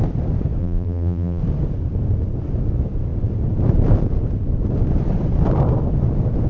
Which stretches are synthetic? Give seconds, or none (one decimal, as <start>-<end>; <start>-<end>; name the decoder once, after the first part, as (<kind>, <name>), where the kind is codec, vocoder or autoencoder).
0.6-1.4 (vocoder, BigVGAN v2)